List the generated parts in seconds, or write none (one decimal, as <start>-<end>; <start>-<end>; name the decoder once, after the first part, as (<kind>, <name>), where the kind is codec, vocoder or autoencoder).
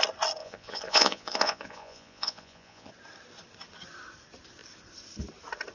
0.4-2.9 (vocoder, Vocos)